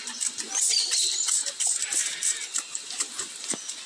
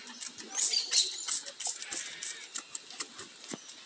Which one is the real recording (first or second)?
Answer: second